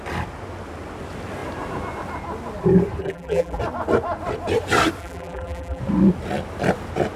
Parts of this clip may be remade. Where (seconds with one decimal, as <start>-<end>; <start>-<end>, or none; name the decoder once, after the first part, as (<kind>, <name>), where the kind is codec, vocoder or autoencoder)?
3.0-3.6 (vocoder, BigVGAN v2); 5.0-5.8